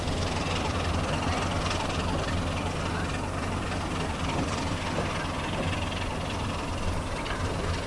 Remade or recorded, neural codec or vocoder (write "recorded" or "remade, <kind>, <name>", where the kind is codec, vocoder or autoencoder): remade, vocoder, BigVGAN v2